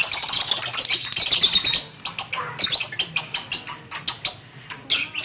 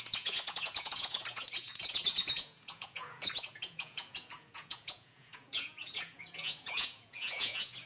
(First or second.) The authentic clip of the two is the first